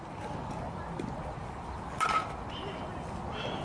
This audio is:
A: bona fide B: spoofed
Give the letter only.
A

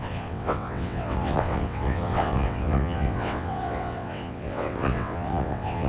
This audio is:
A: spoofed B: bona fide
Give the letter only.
A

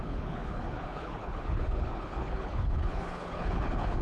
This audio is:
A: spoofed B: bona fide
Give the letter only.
A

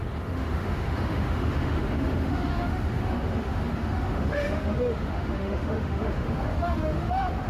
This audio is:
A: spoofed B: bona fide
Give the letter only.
A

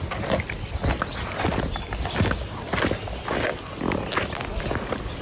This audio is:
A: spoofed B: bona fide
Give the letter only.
B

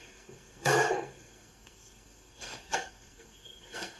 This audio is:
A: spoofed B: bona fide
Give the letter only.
A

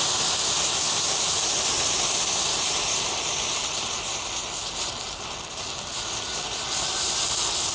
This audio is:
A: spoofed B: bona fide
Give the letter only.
B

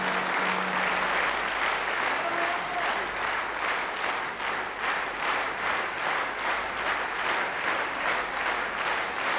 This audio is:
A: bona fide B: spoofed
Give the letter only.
A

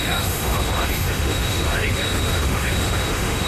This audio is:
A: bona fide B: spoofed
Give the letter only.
B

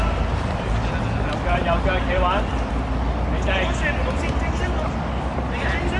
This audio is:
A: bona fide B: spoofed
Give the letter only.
A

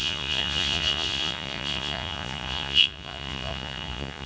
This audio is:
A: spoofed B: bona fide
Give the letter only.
A